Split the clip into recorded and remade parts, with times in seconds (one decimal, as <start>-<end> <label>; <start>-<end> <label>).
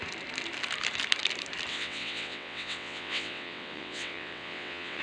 0.0-1.7 recorded; 1.7-5.0 remade